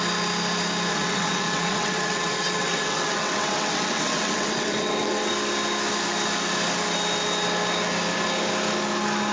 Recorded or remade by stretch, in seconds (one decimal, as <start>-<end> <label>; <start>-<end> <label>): 0.0-0.9 recorded; 0.9-5.3 remade; 5.3-9.3 recorded